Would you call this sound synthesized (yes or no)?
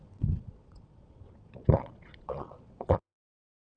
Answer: yes